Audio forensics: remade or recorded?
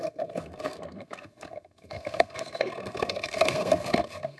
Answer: remade